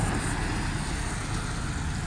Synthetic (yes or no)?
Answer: no